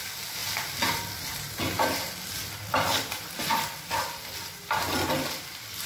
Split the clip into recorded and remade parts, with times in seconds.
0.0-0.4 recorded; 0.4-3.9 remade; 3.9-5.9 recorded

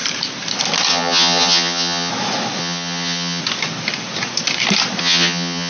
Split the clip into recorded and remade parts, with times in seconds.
0.0-0.9 recorded; 0.9-2.1 remade; 2.1-2.6 recorded; 2.6-3.4 remade; 3.4-5.0 recorded; 5.0-5.7 remade